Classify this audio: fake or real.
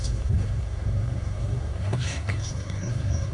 fake